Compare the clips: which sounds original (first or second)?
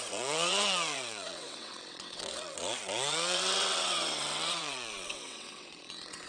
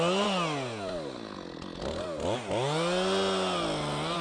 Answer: second